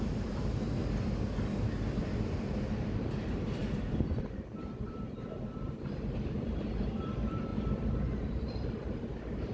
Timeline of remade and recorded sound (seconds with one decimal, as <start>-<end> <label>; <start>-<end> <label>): 0.0-0.8 remade; 0.8-2.0 recorded; 2.0-7.5 remade; 7.5-8.0 recorded; 8.0-9.5 remade